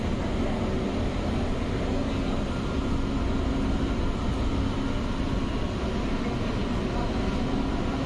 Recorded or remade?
recorded